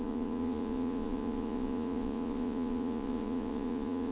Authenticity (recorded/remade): remade